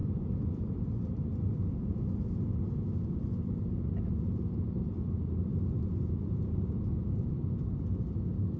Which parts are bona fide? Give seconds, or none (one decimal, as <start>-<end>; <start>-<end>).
0.7-1.3; 2.0-8.6

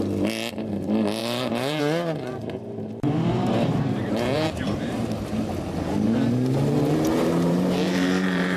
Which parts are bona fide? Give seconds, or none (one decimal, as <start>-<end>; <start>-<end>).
0.0-1.2; 1.8-2.4; 5.2-7.1

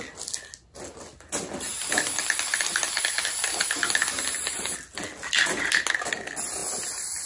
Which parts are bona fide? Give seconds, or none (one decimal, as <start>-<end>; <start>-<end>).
0.0-6.6